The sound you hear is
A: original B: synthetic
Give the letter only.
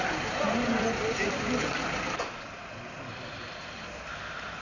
A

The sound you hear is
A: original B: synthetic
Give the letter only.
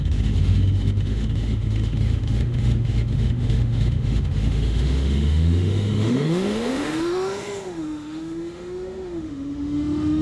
B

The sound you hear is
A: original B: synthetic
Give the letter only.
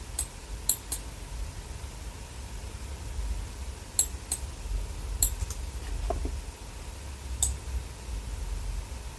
A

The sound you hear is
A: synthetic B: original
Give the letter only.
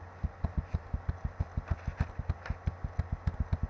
B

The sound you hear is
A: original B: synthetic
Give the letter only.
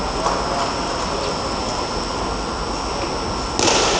A